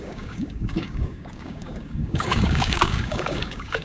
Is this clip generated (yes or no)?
yes